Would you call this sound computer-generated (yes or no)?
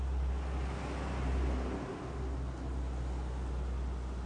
no